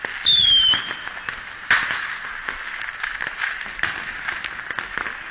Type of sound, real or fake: real